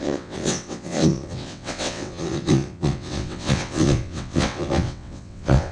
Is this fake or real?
fake